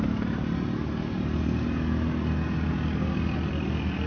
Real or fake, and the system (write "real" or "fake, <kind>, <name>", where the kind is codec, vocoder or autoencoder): real